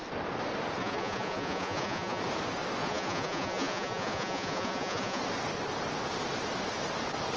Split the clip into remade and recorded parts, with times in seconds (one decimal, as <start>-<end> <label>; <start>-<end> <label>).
0.0-0.8 recorded; 0.8-2.2 remade; 2.2-2.8 recorded; 2.8-5.2 remade; 5.2-7.4 recorded